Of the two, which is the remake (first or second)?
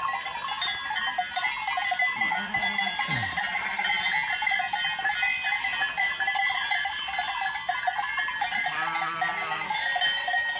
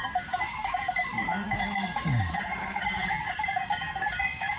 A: second